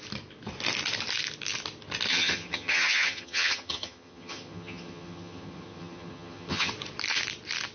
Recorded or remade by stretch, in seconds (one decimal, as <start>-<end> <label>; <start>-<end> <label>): 0.0-2.1 recorded; 2.1-6.7 remade; 6.7-7.7 recorded